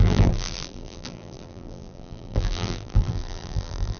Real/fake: fake